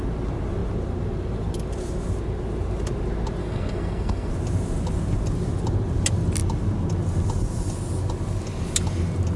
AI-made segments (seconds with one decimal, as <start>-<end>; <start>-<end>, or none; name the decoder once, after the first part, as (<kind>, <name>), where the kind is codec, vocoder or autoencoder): 3.4-4.3 (codec, SNAC)